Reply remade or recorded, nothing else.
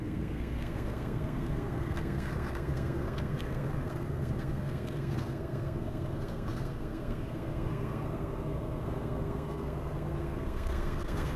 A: remade